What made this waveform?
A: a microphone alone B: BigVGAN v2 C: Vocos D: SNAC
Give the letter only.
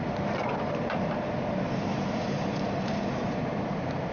B